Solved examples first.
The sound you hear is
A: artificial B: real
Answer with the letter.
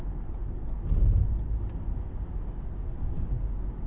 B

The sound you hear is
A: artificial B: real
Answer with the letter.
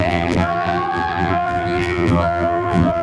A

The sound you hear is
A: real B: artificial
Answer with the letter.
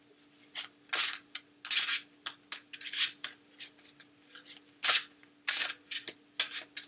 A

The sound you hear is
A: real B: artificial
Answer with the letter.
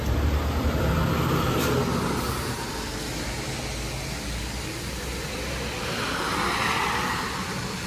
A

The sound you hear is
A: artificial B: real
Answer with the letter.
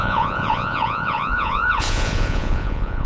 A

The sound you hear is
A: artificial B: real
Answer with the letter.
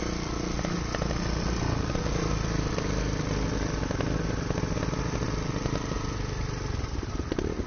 B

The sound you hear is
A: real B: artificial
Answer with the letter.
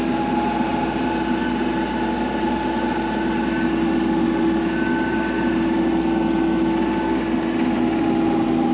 A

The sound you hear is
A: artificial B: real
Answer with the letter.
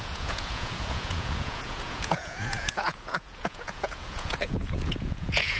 A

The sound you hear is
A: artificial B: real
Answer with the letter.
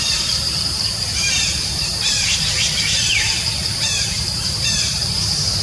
A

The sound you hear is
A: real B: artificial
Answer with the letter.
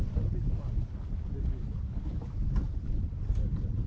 A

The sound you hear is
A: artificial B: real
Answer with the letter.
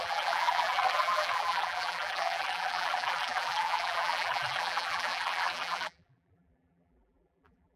A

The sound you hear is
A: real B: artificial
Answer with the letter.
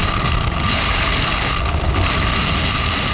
A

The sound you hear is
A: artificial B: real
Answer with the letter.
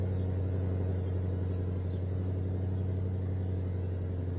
B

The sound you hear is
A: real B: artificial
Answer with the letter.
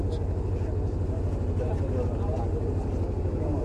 A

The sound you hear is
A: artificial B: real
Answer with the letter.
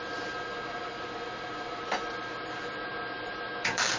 A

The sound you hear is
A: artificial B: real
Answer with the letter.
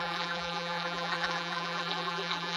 A